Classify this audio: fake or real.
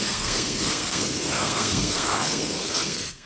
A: fake